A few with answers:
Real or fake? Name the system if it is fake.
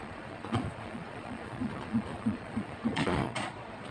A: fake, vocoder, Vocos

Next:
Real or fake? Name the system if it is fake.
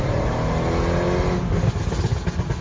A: real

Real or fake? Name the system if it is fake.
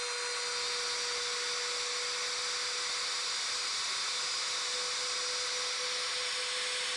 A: real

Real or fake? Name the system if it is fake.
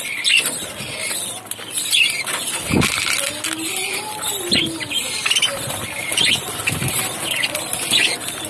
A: real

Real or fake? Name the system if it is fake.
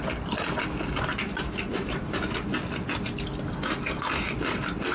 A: real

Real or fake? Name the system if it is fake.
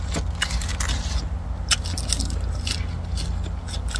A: real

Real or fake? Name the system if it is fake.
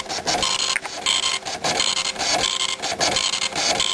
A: real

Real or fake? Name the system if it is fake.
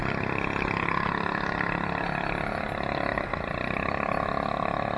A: real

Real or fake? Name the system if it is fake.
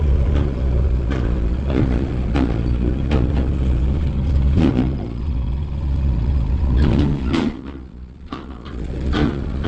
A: fake, vocoder, Vocos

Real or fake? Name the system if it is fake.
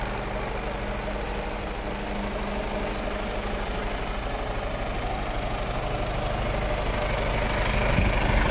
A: real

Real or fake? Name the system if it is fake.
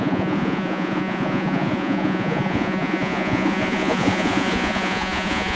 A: fake, vocoder, Vocos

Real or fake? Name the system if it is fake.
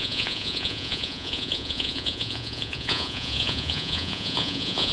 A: fake, vocoder, Vocos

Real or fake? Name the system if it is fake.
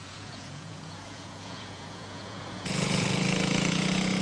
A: fake, vocoder, Vocos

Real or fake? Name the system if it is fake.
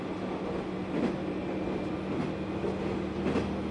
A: real